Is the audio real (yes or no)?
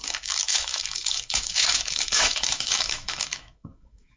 no